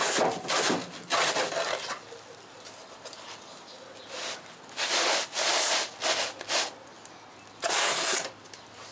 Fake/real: real